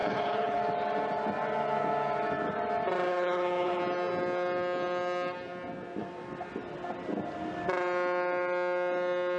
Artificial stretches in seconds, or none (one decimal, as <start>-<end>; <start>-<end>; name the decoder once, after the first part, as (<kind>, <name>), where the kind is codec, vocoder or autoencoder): 0.0-0.6 (codec, HILCodec); 3.1-3.8